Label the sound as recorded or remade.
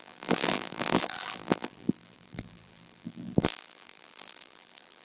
remade